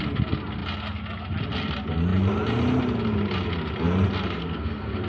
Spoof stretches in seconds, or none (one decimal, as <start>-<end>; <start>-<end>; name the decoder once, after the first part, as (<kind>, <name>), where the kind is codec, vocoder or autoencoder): 4.4-5.1 (codec, SNAC)